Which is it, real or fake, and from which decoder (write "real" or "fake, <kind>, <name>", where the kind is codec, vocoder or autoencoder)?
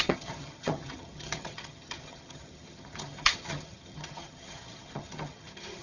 fake, vocoder, HiFi-GAN